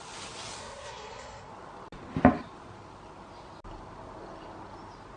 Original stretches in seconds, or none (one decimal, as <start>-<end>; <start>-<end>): 0.0-0.6; 1.5-5.2